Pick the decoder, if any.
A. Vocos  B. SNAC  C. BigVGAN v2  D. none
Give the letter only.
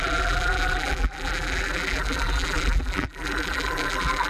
C